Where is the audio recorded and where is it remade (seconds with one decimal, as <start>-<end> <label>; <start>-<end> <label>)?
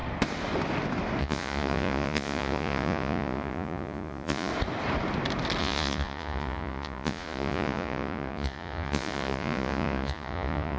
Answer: 0.0-1.2 recorded; 1.2-4.5 remade; 4.5-5.6 recorded; 5.6-10.8 remade